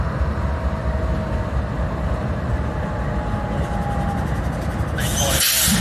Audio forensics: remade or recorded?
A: recorded